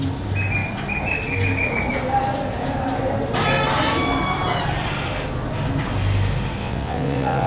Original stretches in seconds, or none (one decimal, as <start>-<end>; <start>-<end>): 0.0-6.6